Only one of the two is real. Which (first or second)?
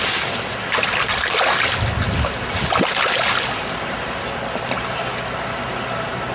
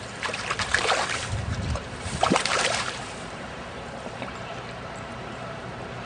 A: first